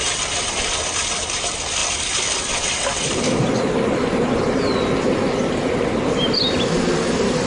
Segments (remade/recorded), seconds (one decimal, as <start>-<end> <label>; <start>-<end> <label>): 0.0-7.5 recorded